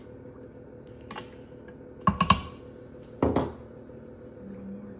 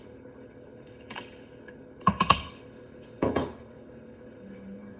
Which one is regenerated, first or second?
second